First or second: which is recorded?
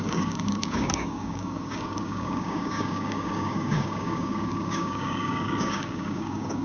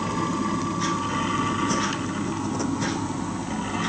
second